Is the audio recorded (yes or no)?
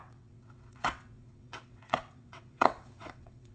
no